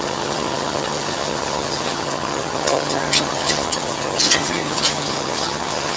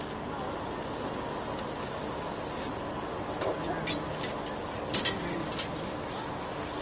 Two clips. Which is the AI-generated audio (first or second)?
first